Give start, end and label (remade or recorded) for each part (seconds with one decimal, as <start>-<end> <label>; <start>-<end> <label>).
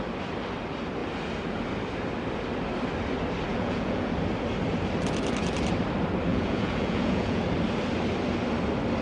0.0-3.5 recorded; 3.5-4.1 remade; 4.1-6.3 recorded; 6.3-7.4 remade; 7.4-9.0 recorded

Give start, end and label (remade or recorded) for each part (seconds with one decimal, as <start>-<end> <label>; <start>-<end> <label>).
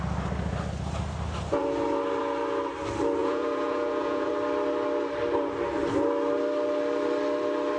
0.0-3.2 recorded; 3.2-4.3 remade; 4.3-7.8 recorded